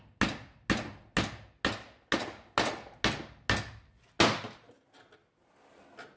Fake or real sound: real